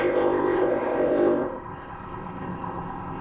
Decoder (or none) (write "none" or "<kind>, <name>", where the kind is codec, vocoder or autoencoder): codec, ZipCodec